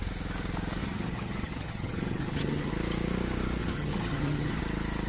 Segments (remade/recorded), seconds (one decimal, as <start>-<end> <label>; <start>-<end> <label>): 0.0-0.8 recorded; 0.8-2.7 remade; 2.7-3.6 recorded; 3.6-4.6 remade; 4.6-5.1 recorded